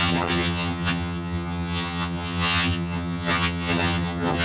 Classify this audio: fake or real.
fake